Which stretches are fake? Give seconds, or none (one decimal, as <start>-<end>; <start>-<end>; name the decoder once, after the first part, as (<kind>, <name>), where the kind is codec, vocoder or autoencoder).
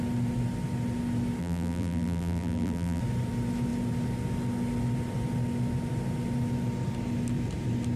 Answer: 1.4-3.0 (vocoder, BigVGAN v2)